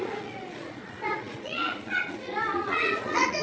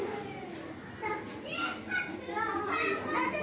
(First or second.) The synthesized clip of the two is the first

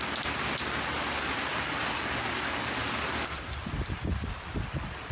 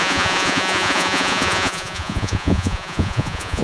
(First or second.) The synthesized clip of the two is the second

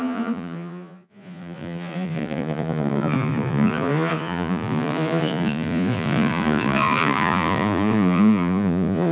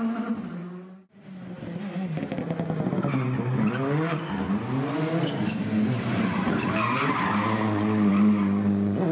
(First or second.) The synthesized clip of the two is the first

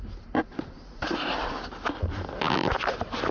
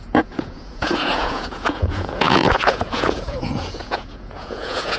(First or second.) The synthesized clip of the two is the second